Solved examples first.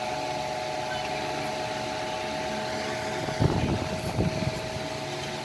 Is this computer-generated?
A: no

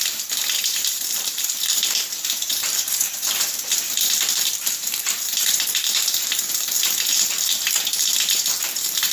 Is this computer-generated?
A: yes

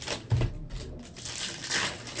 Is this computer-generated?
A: no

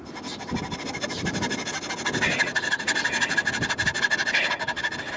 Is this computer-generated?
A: no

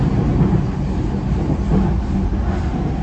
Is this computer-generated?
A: no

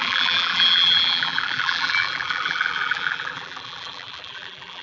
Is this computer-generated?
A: yes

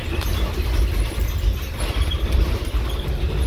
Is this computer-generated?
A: no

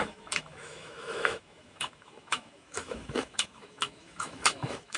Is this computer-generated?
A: yes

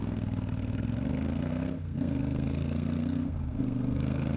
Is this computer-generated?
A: yes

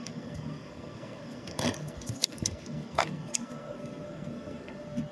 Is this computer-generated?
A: yes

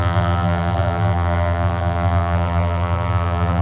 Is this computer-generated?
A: yes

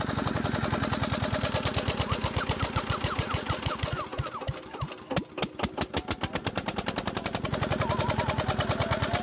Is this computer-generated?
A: no